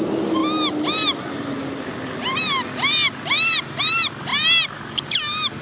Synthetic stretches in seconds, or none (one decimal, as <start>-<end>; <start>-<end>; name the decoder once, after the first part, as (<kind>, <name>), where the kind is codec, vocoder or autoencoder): none